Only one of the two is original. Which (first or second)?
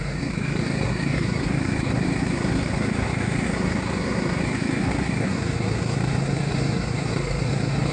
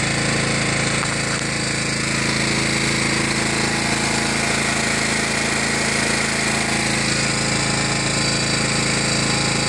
second